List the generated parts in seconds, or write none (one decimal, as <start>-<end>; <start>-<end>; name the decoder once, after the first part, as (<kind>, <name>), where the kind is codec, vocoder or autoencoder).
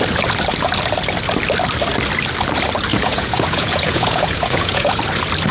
2.9-5.0 (vocoder, Vocos)